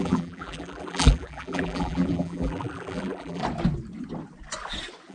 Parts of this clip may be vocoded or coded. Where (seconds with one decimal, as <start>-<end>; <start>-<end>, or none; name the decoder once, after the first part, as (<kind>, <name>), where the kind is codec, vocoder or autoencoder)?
0.0-3.4 (vocoder, BigVGAN v2)